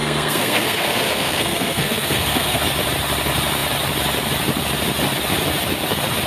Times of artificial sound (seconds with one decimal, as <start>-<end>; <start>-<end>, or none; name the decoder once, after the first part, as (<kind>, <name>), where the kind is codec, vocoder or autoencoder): 0.0-2.6 (codec, SNAC)